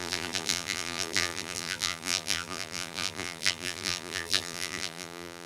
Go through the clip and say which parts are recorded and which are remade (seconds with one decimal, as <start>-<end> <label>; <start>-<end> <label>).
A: 0.0-5.5 remade

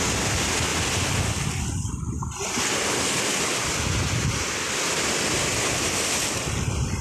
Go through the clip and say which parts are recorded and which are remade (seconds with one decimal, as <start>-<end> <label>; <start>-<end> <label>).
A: 0.0-7.0 recorded

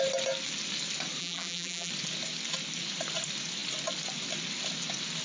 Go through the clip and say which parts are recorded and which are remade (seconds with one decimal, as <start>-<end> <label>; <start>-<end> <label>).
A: 0.0-1.2 recorded; 1.2-1.9 remade; 1.9-5.2 recorded

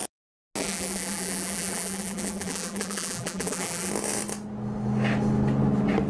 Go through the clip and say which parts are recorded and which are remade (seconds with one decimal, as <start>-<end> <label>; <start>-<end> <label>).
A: 0.0-0.6 recorded; 0.6-3.9 remade; 3.9-6.1 recorded

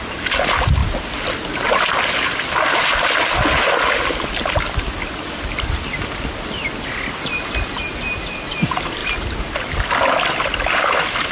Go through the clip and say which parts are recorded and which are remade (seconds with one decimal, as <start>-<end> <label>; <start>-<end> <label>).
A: 0.0-11.3 recorded

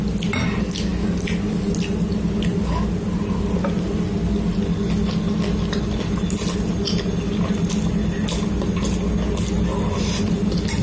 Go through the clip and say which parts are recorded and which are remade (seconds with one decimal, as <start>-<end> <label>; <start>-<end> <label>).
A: 0.0-10.8 recorded

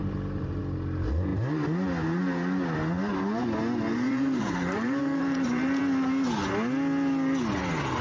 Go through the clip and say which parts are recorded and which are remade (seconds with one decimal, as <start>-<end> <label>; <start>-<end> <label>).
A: 0.0-0.6 remade; 0.6-3.9 recorded; 3.9-5.8 remade; 5.8-8.0 recorded